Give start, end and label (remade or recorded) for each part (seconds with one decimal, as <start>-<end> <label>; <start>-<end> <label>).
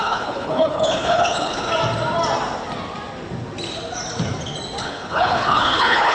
0.0-1.7 remade; 1.7-4.8 recorded; 4.8-6.1 remade